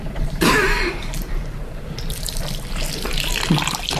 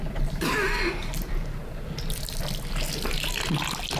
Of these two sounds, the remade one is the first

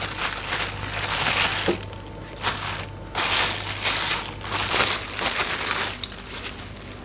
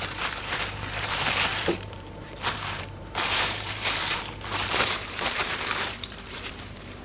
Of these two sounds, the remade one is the second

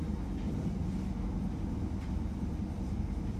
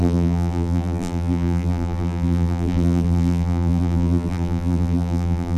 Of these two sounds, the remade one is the second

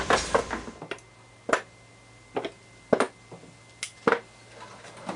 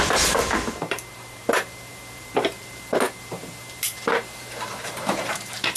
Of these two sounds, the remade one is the second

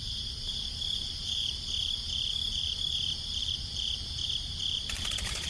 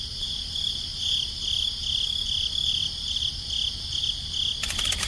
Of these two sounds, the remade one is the first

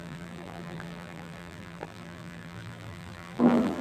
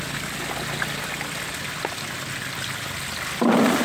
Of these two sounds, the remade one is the first